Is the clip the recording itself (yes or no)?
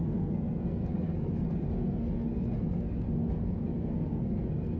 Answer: no